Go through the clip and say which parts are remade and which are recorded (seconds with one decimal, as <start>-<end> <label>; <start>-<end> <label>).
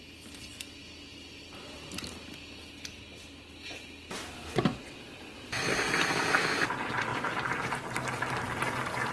0.0-9.1 recorded